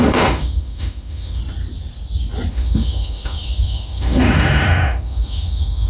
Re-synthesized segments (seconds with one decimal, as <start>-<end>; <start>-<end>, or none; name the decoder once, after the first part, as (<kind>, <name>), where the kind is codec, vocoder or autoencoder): 0.0-1.4 (autoencoder, DAC-VAE); 2.5-5.9